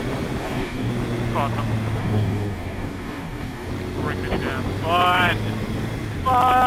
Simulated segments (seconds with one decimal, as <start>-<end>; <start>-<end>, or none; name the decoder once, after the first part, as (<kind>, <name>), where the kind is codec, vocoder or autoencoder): 0.4-0.9 (codec, DAC); 2.0-3.7